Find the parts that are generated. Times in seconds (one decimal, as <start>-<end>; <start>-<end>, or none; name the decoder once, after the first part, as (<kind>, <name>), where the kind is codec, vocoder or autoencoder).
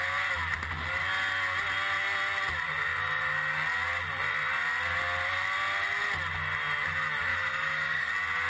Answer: 7.3-8.1 (autoencoder, DAC-VAE)